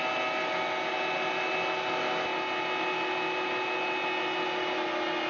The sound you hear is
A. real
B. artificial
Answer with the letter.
A